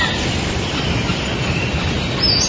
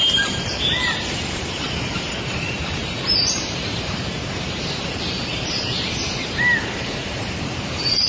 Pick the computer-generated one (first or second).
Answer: second